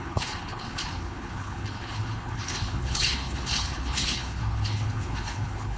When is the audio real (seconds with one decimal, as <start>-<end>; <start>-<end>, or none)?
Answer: none